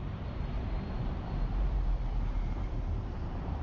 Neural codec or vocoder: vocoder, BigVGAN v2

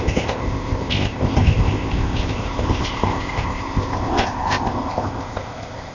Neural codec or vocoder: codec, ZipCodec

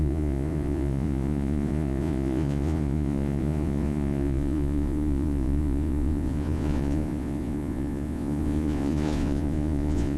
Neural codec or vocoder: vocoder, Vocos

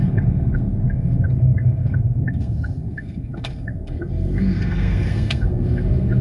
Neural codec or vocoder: codec, SNAC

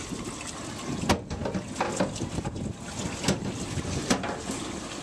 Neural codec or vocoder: none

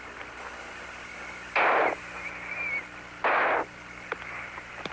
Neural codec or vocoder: none